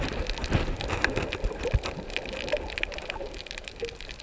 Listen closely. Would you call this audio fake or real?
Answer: real